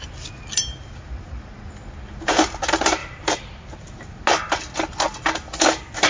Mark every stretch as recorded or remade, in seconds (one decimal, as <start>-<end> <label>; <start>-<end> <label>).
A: 0.0-3.0 recorded; 3.0-4.2 remade; 4.2-6.1 recorded